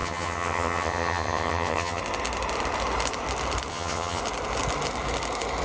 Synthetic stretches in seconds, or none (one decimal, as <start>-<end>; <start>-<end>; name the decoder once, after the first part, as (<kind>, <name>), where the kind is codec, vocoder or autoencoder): 0.0-2.0 (vocoder, HiFi-GAN); 3.7-4.2